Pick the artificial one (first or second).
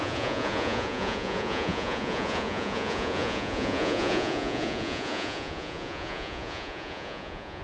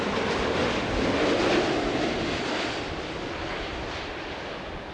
first